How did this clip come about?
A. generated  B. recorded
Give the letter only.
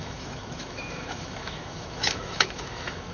A